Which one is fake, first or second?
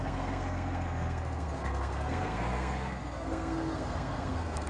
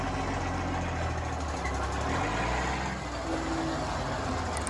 first